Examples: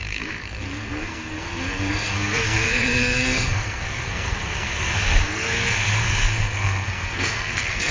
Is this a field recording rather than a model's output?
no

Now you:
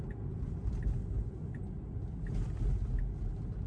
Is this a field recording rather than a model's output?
yes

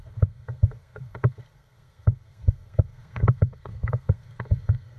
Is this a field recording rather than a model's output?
no